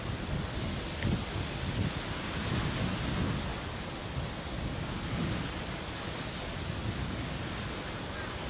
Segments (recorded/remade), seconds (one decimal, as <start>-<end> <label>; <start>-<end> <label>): 0.0-8.5 recorded